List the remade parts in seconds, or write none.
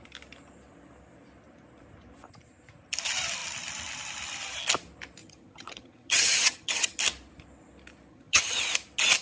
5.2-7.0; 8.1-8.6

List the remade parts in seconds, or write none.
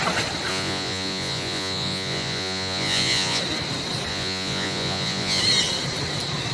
0.5-3.4; 4.1-5.4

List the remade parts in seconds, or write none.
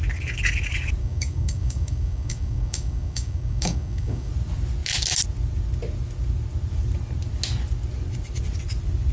1.0-4.3